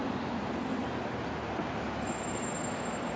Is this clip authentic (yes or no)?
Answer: yes